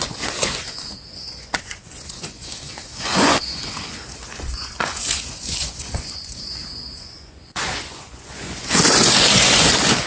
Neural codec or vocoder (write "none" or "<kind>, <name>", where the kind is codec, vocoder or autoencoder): vocoder, Vocos